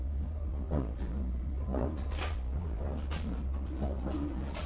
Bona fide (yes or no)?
no